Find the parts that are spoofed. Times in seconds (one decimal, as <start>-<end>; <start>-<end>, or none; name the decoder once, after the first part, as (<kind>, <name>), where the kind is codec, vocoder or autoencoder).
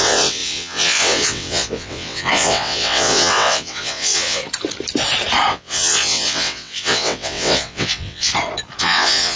0.0-4.4 (vocoder, WaveNeXt); 5.5-8.3; 8.8-9.4